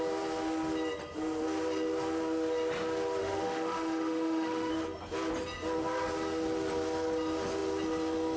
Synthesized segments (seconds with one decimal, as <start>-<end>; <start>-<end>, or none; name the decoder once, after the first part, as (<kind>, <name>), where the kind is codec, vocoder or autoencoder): 3.2-4.7 (autoencoder, DAC-VAE)